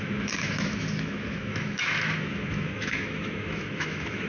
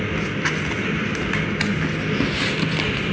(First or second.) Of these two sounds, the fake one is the first